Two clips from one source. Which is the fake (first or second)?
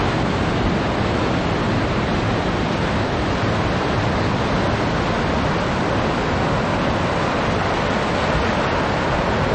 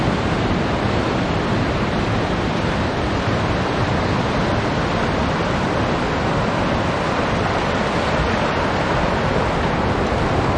second